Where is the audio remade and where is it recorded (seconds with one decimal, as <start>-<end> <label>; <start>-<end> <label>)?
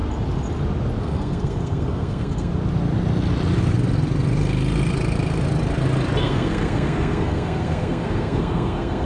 0.0-1.0 recorded; 1.0-2.5 remade; 2.5-6.2 recorded; 6.2-9.0 remade